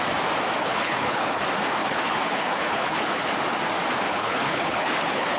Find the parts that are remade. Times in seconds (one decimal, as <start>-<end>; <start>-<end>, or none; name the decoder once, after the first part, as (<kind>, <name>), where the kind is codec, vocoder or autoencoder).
0.6-1.4 (codec, HILCodec); 1.8-3.3; 4.1-5.4